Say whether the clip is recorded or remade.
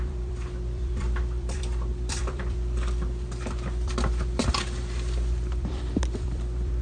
remade